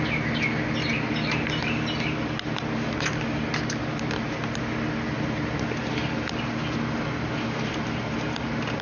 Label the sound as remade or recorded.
recorded